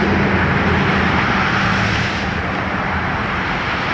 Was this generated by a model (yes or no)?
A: no